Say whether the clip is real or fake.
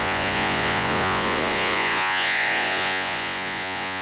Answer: fake